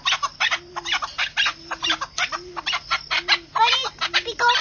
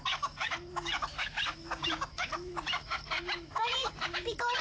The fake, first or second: second